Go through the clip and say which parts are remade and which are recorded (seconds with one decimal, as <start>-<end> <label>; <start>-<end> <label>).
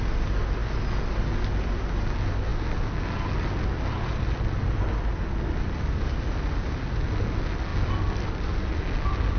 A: 0.0-9.4 recorded